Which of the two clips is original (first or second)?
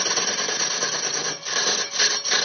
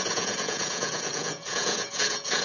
first